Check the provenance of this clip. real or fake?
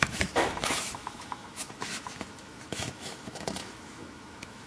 fake